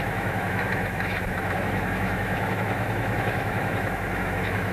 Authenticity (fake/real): fake